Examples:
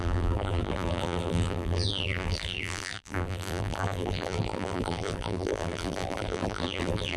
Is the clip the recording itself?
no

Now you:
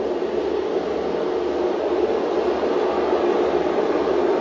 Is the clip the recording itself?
yes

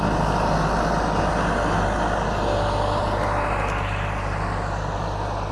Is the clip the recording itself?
yes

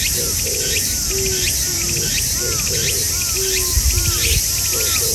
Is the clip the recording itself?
yes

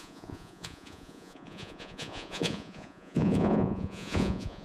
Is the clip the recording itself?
no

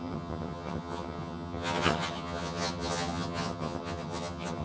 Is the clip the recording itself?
no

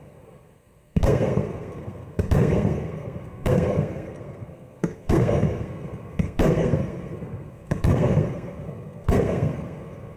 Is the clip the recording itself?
no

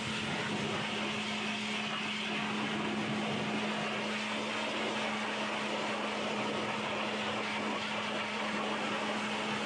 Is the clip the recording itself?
yes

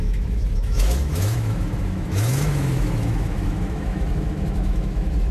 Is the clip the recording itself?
no